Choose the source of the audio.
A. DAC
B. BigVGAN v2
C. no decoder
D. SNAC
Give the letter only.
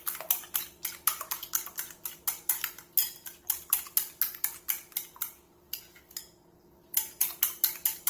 C